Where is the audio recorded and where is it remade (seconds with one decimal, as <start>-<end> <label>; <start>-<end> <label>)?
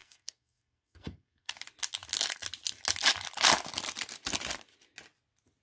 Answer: 0.0-1.5 remade; 1.5-5.6 recorded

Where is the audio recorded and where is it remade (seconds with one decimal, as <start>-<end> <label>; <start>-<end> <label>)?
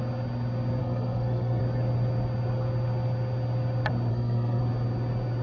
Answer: 0.0-0.8 recorded; 0.8-1.6 remade; 1.6-4.1 recorded; 4.1-4.6 remade; 4.6-5.4 recorded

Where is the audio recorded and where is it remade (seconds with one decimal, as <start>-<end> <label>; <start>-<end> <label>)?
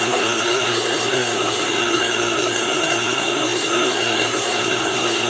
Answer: 0.0-5.3 remade